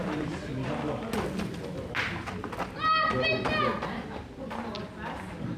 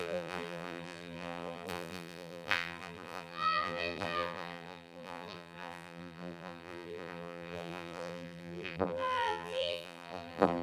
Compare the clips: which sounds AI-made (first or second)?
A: second